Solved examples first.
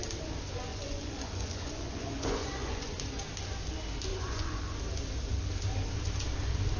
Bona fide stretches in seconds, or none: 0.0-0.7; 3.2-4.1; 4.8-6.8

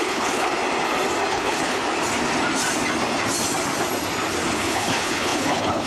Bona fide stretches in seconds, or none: 0.5-1.3; 1.8-4.5

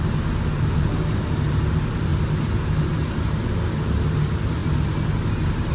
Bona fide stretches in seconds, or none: 0.0-5.7

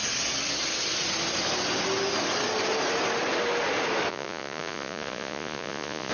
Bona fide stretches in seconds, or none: 0.0-4.1

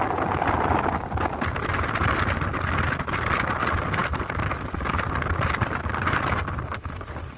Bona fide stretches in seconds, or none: 0.0-7.4

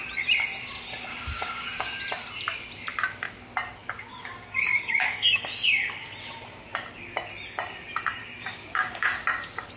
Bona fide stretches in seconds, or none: 0.0-1.1; 2.0-3.8; 6.1-8.2; 9.2-9.8

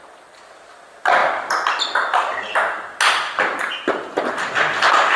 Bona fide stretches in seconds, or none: 0.0-5.2

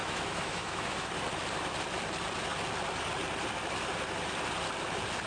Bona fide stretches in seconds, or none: 1.1-5.3